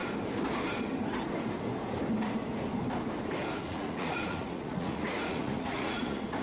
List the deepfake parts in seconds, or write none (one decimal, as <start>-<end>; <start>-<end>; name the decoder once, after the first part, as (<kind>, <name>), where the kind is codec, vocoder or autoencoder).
3.6-6.4 (vocoder, Vocos)